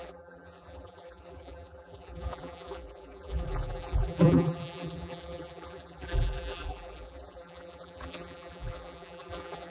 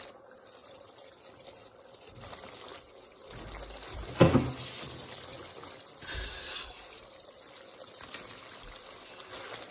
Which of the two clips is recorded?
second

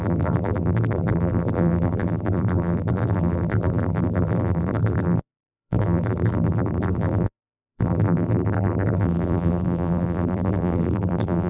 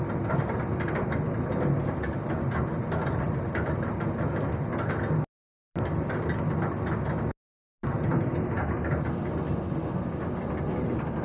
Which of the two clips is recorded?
second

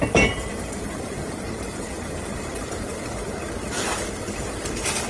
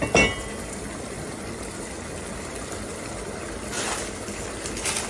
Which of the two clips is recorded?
second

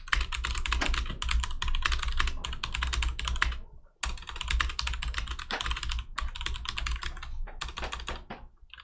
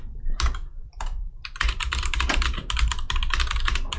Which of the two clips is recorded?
first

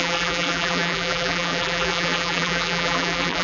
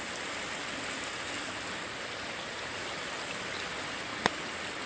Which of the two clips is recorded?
second